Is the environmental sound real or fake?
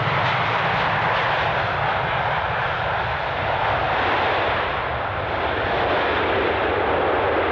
real